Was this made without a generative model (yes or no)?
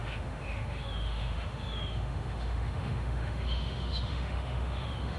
no